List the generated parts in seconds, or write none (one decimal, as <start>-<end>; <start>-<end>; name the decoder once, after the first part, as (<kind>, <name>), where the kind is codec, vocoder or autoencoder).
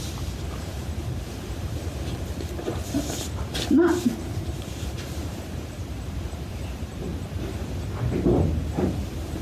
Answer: 0.0-7.1 (vocoder, BigVGAN v2); 8.0-9.4